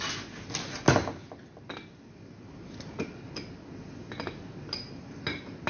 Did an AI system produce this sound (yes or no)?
no